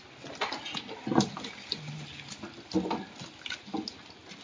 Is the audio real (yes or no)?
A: yes